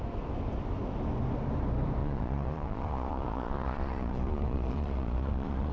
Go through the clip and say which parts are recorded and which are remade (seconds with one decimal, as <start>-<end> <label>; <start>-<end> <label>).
0.0-2.0 recorded; 2.0-5.7 remade